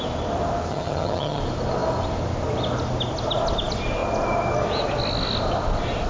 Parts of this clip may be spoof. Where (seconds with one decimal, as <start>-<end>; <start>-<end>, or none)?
0.7-1.4